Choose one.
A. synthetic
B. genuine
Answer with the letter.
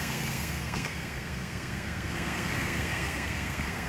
A